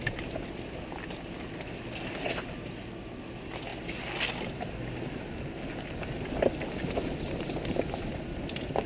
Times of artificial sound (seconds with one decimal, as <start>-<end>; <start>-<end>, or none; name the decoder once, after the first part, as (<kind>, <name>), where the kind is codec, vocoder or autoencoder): none